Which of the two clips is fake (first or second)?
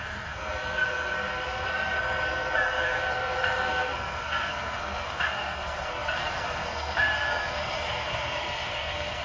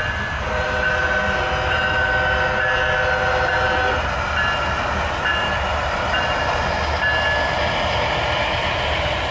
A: first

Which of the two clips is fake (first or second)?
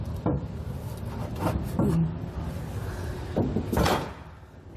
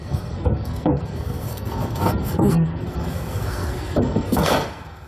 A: second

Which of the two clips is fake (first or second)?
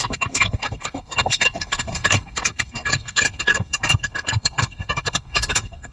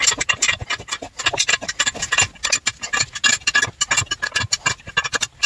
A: first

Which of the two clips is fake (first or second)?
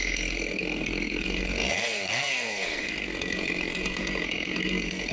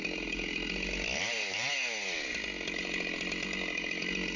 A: first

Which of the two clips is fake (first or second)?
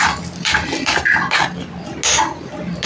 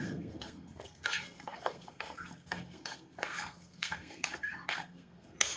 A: second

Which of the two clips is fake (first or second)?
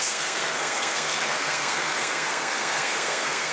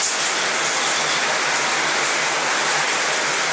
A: first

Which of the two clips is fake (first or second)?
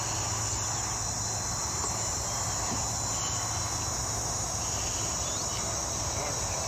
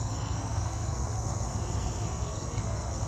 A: second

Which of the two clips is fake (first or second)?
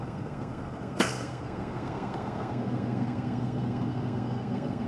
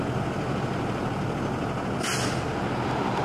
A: first